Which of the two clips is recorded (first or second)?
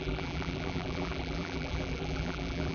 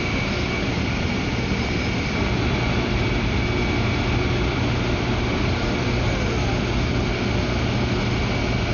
second